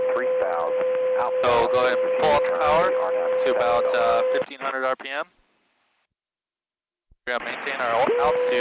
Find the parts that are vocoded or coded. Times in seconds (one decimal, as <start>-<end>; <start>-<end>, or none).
4.1-5.3; 6.1-7.5